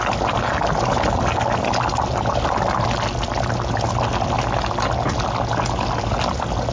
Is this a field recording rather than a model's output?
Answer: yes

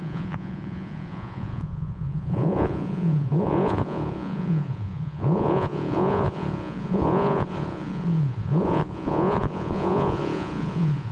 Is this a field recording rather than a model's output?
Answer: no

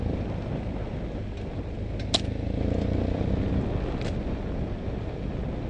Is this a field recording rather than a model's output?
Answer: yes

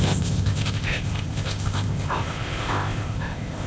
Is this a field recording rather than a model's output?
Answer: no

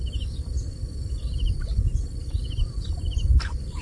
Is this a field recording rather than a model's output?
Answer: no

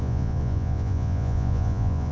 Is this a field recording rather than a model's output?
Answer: no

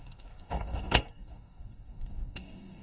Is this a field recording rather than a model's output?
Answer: no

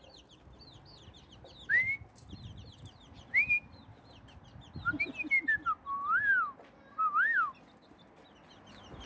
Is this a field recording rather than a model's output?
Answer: yes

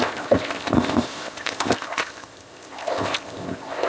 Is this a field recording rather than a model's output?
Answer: no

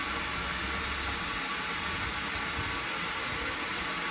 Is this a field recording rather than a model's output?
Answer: yes